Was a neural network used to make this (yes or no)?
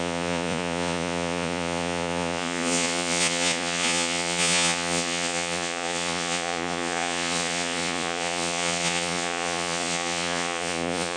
yes